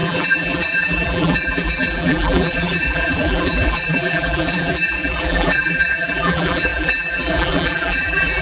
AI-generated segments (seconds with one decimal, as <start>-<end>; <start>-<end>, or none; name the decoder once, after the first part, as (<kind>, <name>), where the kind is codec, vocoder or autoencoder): 0.0-8.4 (vocoder, BigVGAN v2)